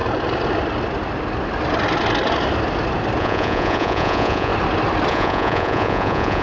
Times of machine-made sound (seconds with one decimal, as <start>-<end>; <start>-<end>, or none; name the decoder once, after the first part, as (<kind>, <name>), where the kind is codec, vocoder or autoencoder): 3.2-4.5 (vocoder, Vocos); 5.1-6.4